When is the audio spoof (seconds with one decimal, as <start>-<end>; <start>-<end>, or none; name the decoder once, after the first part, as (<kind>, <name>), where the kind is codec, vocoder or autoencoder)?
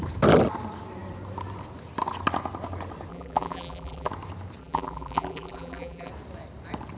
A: 3.1-4.1 (vocoder, BigVGAN v2); 4.6-6.1